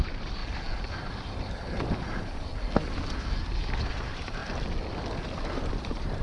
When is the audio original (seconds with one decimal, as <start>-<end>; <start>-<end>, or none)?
0.4-0.9; 2.5-3.9; 4.4-5.7